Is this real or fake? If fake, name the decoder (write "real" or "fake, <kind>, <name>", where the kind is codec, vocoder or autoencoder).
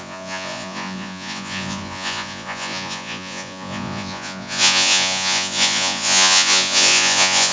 fake, vocoder, Vocos